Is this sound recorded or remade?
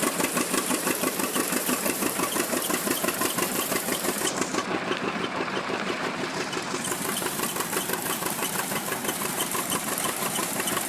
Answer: remade